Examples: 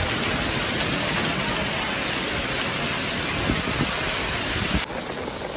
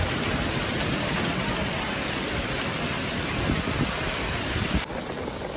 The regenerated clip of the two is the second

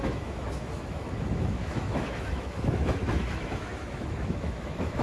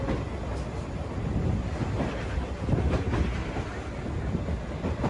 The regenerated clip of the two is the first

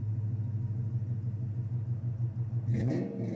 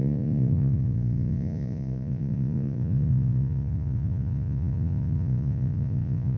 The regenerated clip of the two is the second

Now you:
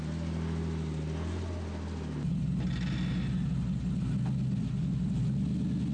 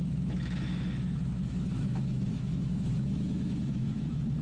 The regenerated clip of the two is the second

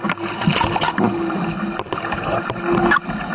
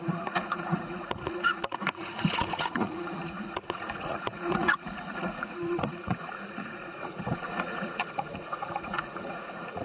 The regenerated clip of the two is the second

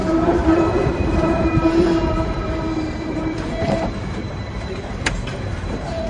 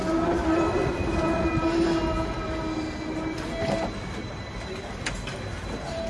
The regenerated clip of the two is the first